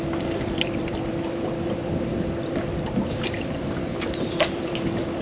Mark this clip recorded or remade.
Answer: remade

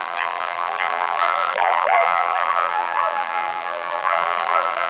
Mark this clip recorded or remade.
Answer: remade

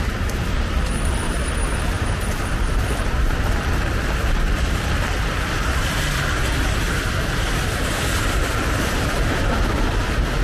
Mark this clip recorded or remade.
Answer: remade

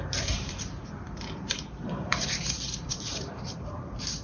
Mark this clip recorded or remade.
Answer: remade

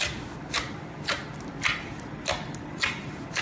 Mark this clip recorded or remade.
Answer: recorded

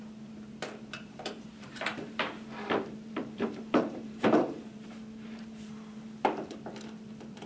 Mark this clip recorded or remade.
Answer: remade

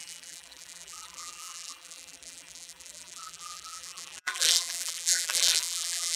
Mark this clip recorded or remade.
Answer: remade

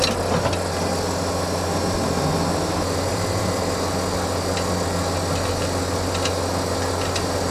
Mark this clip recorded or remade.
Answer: recorded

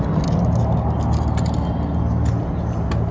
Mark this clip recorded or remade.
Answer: recorded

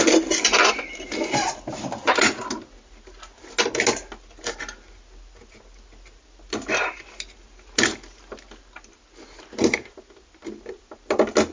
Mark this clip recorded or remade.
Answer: recorded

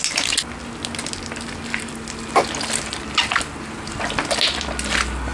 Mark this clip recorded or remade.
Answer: recorded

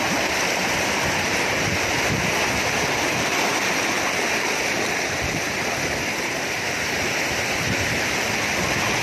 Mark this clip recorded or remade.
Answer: recorded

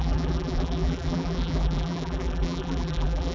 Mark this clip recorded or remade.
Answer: remade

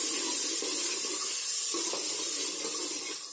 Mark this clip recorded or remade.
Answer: recorded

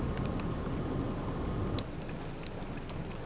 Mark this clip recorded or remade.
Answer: recorded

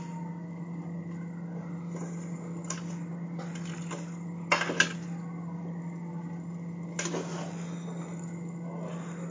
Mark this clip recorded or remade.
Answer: recorded